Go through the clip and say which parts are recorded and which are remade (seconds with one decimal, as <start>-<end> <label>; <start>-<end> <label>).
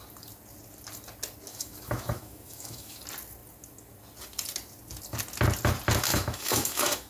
0.0-1.5 recorded; 1.5-3.0 remade; 3.0-6.1 recorded; 6.1-7.1 remade